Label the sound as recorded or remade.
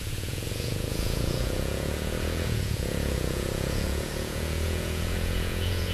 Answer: remade